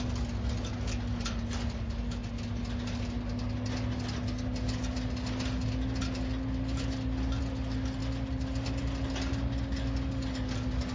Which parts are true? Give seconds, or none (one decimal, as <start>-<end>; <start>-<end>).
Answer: 0.0-10.9